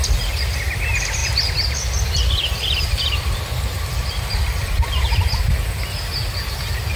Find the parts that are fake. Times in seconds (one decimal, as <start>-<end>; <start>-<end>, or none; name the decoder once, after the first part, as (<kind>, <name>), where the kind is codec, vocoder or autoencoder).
1.2-5.4 (vocoder, BigVGAN v2)